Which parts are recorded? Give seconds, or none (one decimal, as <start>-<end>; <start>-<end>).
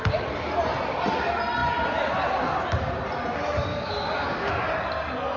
0.0-3.7; 4.5-5.4